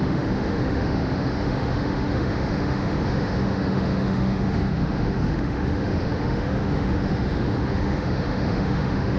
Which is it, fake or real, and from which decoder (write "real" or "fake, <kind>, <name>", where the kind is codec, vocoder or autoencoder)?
fake, autoencoder, DAC-VAE